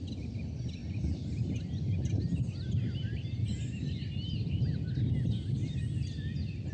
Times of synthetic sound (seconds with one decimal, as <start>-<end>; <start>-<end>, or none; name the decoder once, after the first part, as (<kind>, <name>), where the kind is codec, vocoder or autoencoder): none